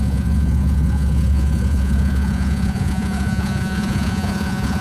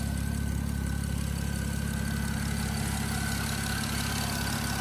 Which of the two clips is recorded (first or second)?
second